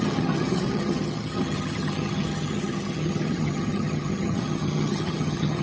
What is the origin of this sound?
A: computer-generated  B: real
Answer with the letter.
A